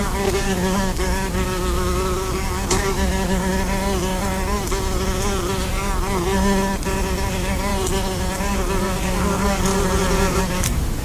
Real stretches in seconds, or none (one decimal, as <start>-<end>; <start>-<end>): 3.5-7.3; 7.7-9.0; 9.7-10.4